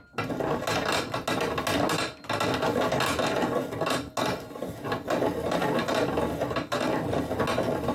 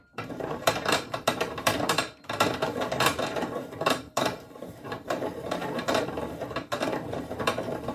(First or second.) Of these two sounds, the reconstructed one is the second